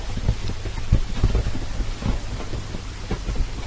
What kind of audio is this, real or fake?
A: real